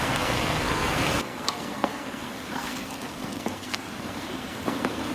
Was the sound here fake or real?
fake